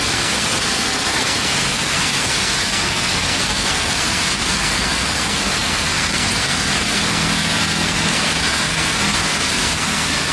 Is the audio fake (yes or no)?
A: yes